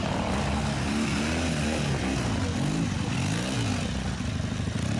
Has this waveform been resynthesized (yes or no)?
no